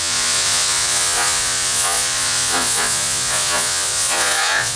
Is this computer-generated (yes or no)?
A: yes